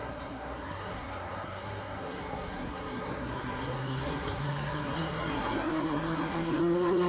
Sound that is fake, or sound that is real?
fake